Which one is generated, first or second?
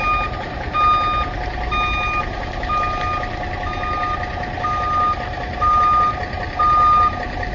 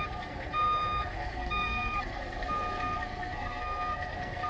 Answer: second